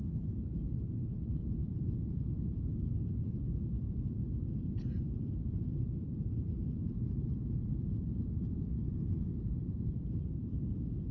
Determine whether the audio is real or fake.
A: fake